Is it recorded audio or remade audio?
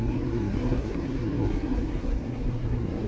remade